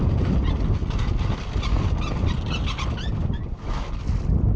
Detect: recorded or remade recorded